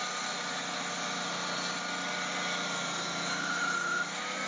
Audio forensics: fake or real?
real